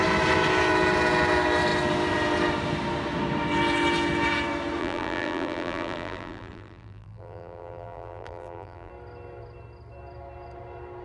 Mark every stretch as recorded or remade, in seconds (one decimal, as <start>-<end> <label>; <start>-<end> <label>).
0.0-4.8 recorded; 4.8-8.9 remade; 8.9-11.0 recorded